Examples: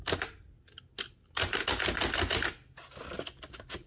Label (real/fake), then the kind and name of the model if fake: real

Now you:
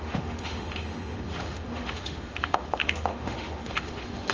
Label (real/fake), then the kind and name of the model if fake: fake, autoencoder, DAC-VAE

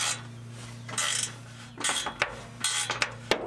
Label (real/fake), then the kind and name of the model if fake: real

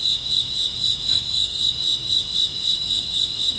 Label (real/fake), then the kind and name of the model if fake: fake, autoencoder, DAC-VAE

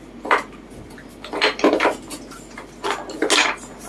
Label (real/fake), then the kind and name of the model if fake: real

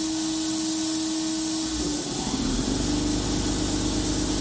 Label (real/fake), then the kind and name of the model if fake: real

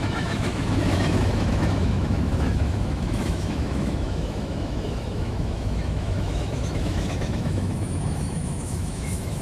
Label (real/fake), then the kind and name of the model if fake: fake, autoencoder, DAC-VAE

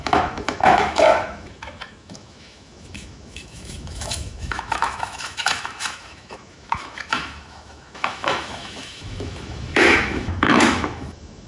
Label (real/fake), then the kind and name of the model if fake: fake, autoencoder, DAC-VAE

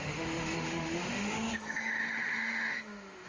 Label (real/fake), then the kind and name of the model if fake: fake, autoencoder, DAC-VAE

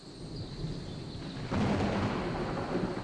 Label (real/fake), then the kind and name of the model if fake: real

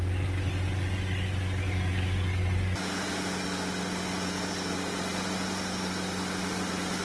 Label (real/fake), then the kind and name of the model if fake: real